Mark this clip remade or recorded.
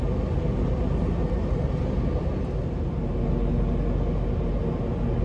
recorded